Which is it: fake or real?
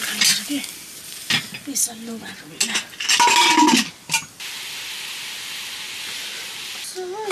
real